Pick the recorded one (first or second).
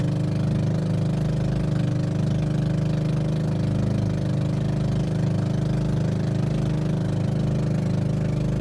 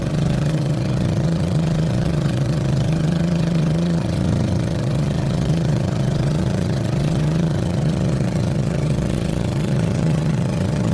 first